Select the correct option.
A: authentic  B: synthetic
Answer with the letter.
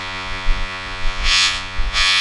B